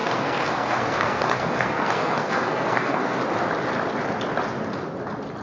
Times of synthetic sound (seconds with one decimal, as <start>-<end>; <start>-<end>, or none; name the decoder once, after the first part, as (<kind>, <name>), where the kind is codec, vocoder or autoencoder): 0.0-3.2 (codec, SNAC)